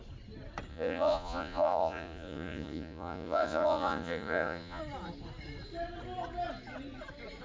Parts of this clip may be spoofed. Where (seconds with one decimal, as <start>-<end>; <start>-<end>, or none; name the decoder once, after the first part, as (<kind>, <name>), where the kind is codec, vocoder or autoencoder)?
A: 0.7-4.8 (vocoder, Vocos)